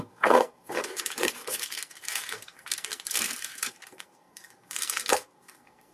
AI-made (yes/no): yes